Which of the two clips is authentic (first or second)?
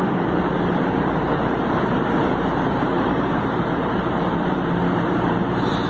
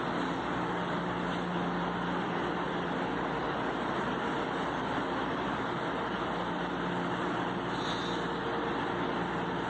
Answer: second